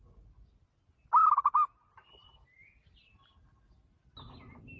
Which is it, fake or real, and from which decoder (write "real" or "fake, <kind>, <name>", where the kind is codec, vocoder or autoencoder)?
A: real